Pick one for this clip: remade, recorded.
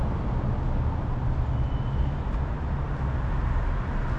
recorded